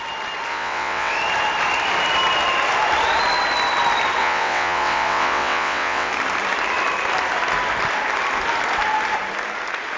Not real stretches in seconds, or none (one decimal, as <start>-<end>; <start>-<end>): 0.5-1.1; 4.2-6.1